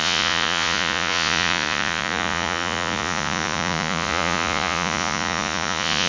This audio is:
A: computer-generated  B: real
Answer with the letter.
A